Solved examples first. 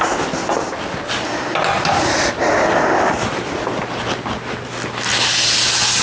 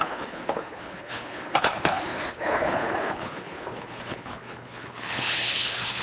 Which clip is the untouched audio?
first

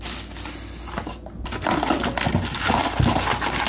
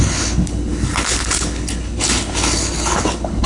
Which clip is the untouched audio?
first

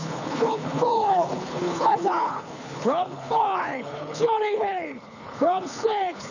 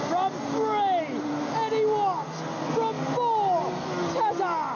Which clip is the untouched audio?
second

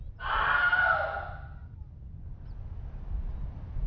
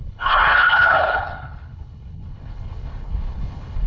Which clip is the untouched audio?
first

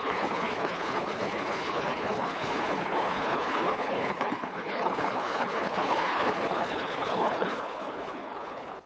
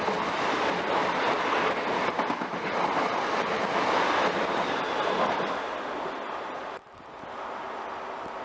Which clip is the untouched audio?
second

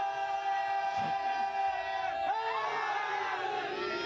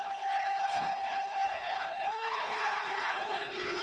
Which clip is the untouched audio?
first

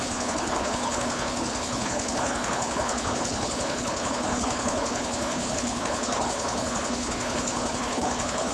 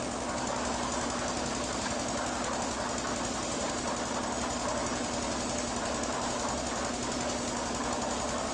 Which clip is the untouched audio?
second